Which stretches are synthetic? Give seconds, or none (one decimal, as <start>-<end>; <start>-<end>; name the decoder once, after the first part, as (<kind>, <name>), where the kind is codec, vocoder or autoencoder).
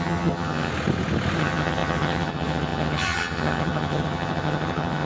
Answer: 0.0-0.7 (vocoder, HiFi-GAN); 1.4-5.1